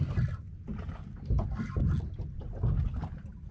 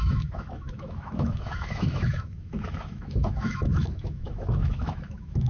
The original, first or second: first